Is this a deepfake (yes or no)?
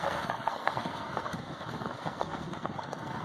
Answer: yes